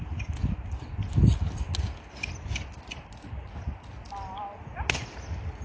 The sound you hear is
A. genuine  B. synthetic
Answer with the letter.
A